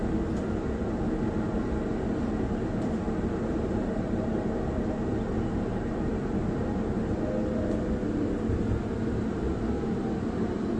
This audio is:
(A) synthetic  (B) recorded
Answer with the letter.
B